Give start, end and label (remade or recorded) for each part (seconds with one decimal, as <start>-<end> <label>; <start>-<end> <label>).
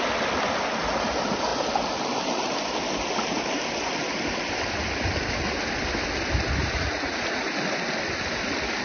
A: 0.0-6.6 recorded; 6.6-7.5 remade; 7.5-8.8 recorded